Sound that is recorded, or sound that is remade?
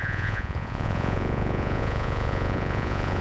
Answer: remade